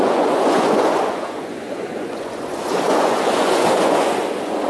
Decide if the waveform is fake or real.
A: fake